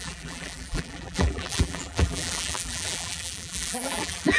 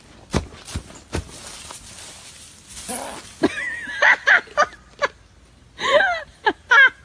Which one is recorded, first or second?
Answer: second